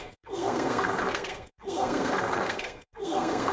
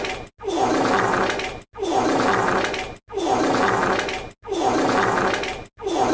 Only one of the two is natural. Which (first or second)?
second